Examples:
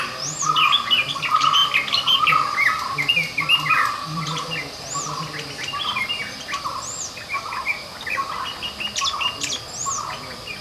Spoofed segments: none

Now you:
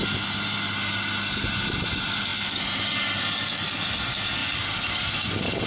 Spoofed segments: none

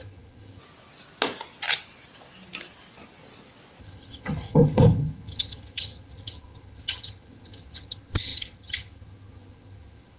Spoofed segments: 0.0-0.6 (vocoder, HiFi-GAN); 3.8-10.2

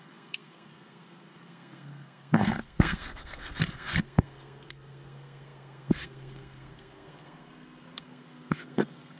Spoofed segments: 0.0-9.2 (codec, SNAC)

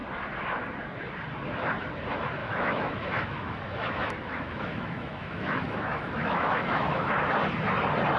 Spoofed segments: 2.4-7.1 (autoencoder, DAC-VAE)

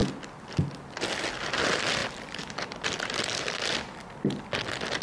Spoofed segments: 2.0-4.4 (vocoder, BigVGAN v2)